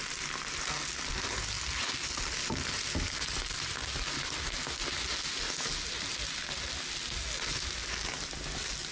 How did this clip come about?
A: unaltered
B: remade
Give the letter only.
A